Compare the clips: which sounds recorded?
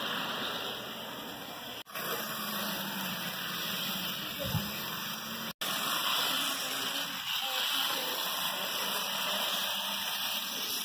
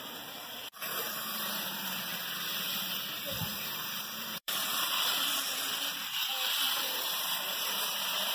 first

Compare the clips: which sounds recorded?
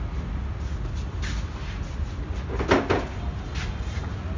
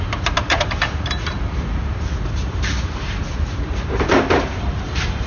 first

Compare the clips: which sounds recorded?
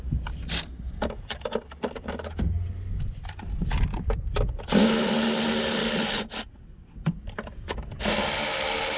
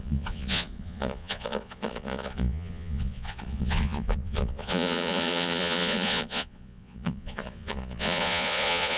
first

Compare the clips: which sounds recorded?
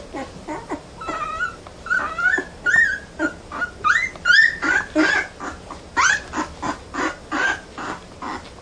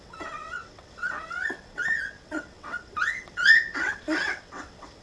first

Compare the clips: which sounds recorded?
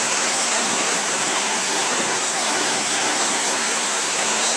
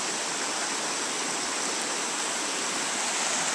second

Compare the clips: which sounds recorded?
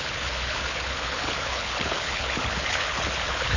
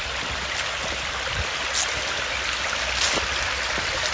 second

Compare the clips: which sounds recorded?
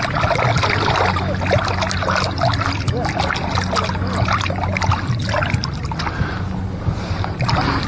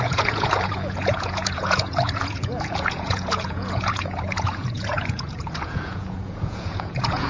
first